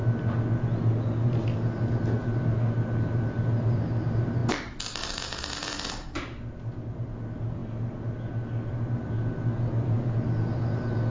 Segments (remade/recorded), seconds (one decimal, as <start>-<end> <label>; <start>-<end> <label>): 0.0-11.1 recorded